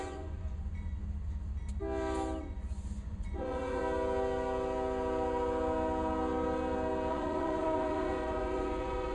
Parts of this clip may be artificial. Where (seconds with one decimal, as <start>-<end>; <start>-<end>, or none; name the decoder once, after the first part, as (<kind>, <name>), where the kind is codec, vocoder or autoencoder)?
0.0-1.0 (vocoder, Vocos); 2.4-3.8; 7.1-9.1